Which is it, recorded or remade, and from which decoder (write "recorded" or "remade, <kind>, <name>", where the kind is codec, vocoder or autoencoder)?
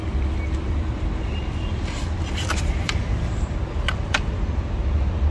recorded